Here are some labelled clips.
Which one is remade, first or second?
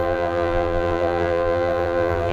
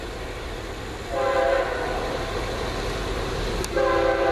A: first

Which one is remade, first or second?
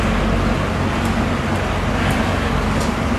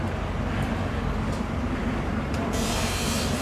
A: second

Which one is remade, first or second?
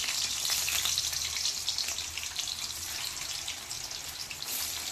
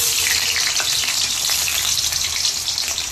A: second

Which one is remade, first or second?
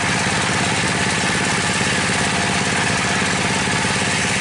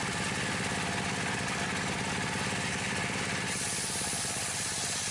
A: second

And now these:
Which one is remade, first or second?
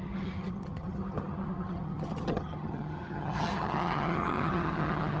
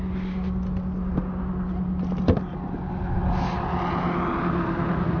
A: first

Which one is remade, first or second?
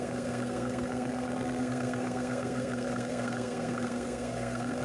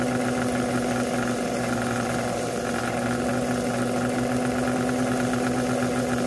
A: first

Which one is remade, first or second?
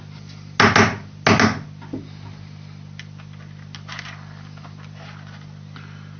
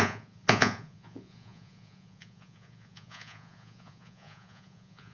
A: second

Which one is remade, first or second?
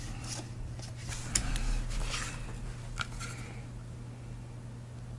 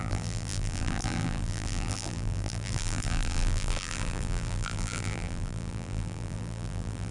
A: second